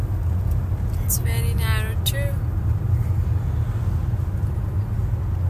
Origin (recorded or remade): recorded